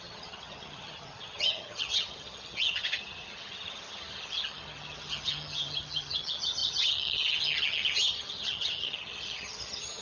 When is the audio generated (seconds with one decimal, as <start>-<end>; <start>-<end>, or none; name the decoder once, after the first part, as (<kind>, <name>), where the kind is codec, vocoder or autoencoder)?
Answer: 0.0-10.0 (vocoder, HiFi-GAN)